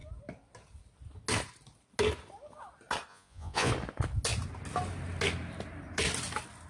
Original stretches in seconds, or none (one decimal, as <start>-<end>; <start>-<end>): 0.0-3.1; 3.7-6.7